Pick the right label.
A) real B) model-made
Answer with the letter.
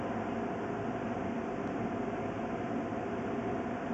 A